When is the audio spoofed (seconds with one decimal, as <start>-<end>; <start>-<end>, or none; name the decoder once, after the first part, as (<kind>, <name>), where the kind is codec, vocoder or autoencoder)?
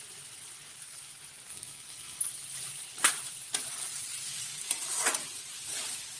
1.5-2.2 (codec, SNAC)